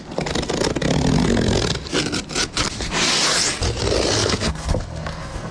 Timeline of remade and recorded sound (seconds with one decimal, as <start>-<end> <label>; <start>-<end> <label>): 0.0-4.2 recorded; 4.2-5.5 remade